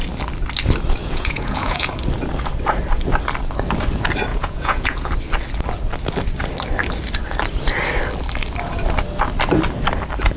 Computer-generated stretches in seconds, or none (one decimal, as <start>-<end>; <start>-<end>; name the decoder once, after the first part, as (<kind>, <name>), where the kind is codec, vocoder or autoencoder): 1.0-1.9 (vocoder, Vocos); 4.3-5.1